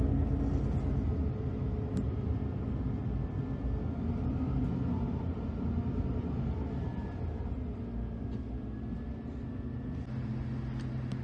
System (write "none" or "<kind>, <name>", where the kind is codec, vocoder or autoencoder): none